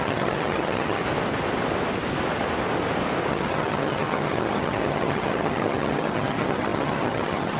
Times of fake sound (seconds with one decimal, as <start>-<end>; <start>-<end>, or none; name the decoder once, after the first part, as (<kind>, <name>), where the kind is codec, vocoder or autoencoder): 0.0-1.0 (vocoder, HiFi-GAN); 3.3-7.6